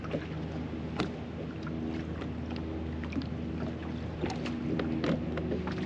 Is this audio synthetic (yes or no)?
no